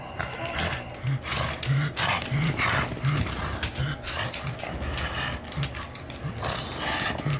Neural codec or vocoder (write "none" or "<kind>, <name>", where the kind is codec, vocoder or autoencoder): none